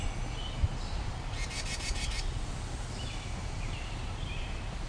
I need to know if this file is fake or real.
real